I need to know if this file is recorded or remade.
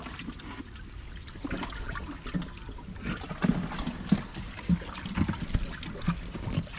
recorded